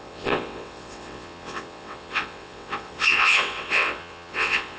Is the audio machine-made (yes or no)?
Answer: yes